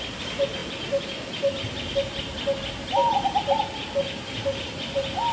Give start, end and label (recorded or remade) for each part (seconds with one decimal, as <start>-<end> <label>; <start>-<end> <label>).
0.0-5.3 recorded